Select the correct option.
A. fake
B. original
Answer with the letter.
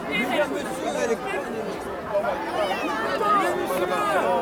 B